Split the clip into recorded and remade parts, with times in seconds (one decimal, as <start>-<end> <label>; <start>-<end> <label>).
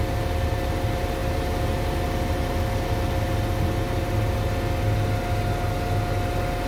0.0-6.7 recorded